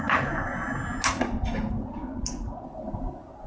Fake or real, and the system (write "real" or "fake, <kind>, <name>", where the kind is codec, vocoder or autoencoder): real